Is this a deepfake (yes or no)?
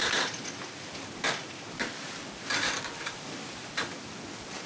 no